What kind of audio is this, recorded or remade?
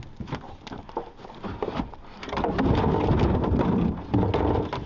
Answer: recorded